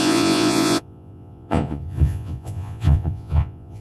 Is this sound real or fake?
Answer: fake